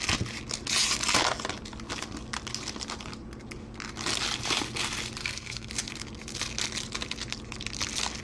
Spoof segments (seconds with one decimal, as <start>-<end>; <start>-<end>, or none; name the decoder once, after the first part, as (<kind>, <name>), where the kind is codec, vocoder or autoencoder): 5.2-5.7 (codec, SNAC)